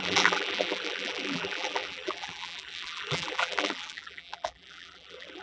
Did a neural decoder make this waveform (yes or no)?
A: yes